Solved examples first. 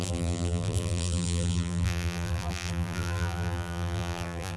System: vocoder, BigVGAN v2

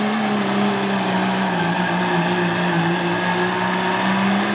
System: none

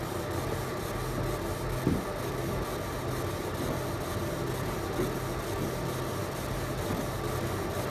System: none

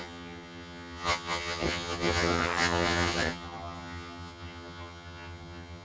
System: vocoder, HiFi-GAN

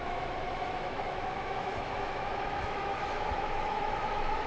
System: autoencoder, DAC-VAE